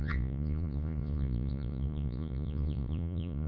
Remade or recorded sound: remade